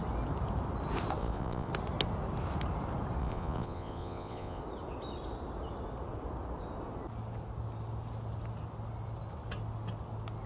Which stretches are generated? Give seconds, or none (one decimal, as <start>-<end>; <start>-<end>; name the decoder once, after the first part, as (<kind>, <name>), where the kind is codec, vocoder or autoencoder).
1.2-1.7 (vocoder, Vocos); 3.2-4.6